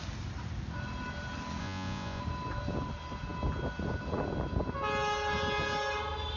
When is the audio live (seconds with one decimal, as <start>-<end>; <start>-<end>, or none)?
0.0-1.6; 2.2-6.4